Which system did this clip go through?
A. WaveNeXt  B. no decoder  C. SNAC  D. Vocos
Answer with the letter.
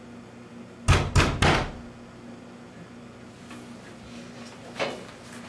B